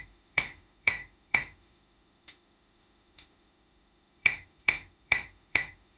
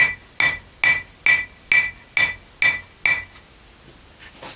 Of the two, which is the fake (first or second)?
first